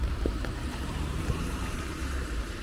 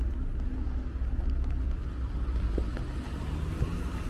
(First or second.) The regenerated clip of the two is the first